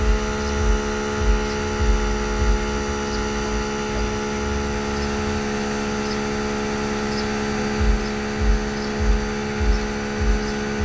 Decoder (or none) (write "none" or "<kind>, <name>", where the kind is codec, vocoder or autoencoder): none